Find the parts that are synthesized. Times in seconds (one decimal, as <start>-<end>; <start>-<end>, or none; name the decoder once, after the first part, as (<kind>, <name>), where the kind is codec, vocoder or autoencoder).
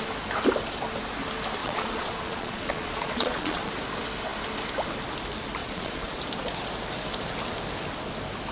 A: 1.6-3.7 (vocoder, Vocos); 5.6-6.2